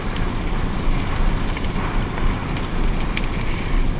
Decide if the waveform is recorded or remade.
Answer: recorded